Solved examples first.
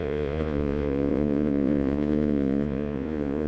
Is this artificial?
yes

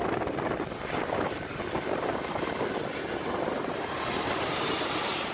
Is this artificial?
no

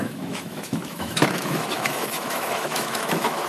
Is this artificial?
yes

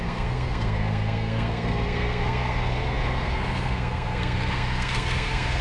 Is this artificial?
yes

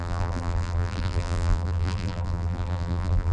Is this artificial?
yes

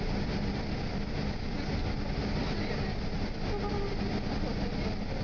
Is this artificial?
no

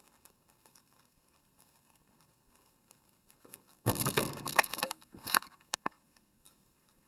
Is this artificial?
yes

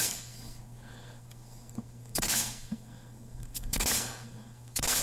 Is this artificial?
yes